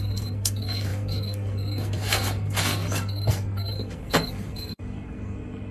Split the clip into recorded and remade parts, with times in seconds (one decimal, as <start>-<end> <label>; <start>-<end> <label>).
0.0-5.7 remade